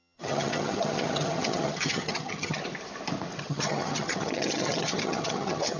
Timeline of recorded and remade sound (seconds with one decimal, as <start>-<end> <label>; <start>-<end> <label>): 0.0-2.6 remade; 2.6-3.4 recorded; 3.4-5.8 remade